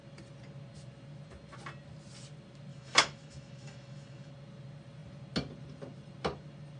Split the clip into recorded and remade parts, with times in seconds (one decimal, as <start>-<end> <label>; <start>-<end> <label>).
0.0-2.7 recorded; 2.7-4.3 remade; 4.3-6.8 recorded